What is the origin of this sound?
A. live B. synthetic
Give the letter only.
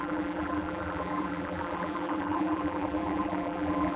B